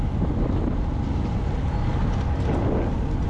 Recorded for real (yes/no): yes